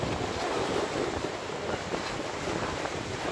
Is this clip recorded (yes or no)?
yes